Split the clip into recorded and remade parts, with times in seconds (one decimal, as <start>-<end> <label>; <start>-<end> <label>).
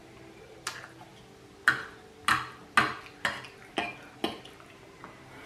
0.0-5.5 recorded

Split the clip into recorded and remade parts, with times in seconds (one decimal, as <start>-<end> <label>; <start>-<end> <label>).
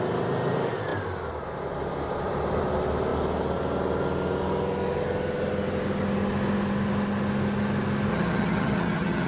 0.0-8.1 recorded; 8.1-9.3 remade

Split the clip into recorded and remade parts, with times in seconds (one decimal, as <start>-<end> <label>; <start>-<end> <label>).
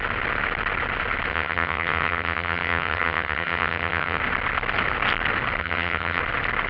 0.0-1.3 recorded; 1.3-4.2 remade; 4.2-5.6 recorded; 5.6-6.2 remade; 6.2-6.7 recorded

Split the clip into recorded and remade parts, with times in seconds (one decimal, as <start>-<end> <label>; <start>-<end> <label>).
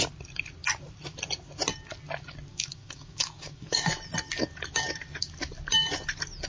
0.0-2.5 recorded; 2.5-4.0 remade; 4.0-6.5 recorded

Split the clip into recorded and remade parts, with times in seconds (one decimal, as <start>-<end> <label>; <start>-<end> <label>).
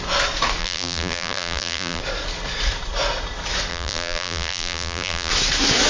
0.0-0.6 recorded; 0.6-2.0 remade; 2.0-3.7 recorded; 3.7-5.3 remade; 5.3-5.9 recorded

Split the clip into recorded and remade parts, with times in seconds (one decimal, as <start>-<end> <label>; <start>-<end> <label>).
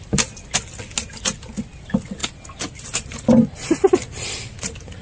0.0-5.0 recorded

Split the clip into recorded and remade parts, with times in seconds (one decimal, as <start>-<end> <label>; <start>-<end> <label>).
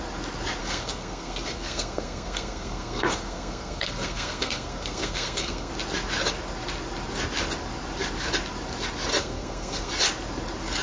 0.0-0.6 recorded; 0.6-5.7 remade; 5.7-9.2 recorded; 9.2-9.9 remade; 9.9-10.8 recorded